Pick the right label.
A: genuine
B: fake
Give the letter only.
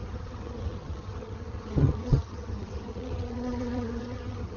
B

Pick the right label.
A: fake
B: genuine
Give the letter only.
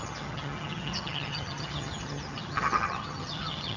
A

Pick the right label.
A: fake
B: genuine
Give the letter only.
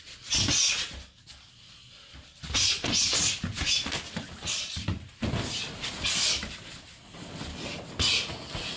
B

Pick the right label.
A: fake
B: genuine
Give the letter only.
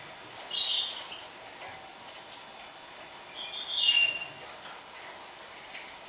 B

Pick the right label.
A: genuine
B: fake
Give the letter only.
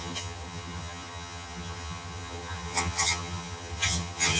B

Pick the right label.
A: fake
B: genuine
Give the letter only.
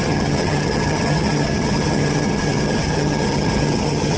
A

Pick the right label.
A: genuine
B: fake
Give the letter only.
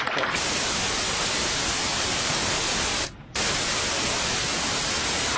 A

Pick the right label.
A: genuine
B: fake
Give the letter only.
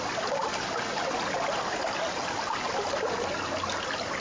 A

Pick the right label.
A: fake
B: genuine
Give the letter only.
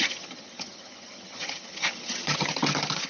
A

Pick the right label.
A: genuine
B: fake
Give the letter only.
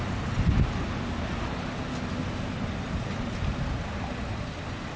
A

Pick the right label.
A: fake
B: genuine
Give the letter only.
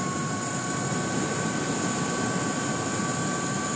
B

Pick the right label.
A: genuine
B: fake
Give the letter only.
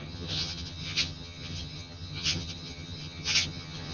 B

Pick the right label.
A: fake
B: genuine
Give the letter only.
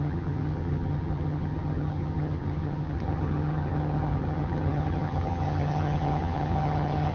A